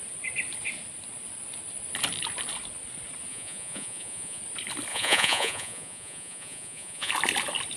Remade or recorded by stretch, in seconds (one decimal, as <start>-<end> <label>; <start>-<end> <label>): 0.0-3.3 recorded; 3.3-4.4 remade; 4.4-4.9 recorded; 4.9-7.1 remade; 7.1-7.8 recorded